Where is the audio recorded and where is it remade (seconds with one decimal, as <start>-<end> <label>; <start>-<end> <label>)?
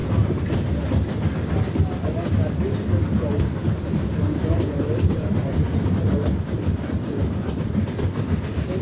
0.0-8.8 recorded